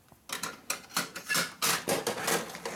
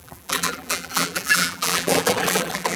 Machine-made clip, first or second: second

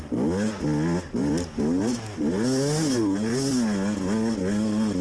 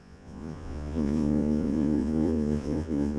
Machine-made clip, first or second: second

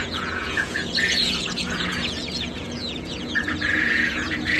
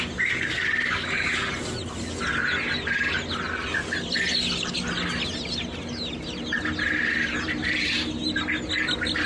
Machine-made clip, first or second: first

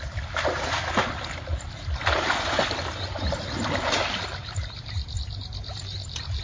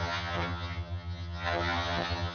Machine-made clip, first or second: second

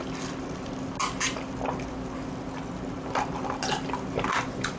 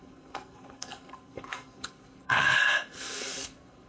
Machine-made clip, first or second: second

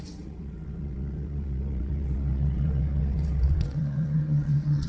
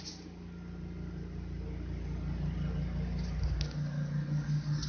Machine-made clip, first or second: first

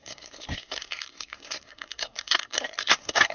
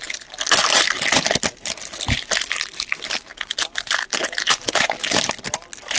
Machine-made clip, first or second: first